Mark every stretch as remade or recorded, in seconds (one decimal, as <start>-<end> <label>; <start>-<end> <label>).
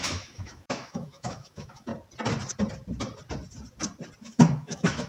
0.0-1.9 remade; 1.9-4.2 recorded; 4.2-5.1 remade